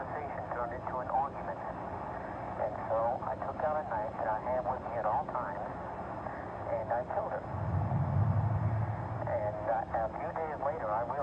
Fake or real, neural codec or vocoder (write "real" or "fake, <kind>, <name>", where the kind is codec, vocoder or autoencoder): real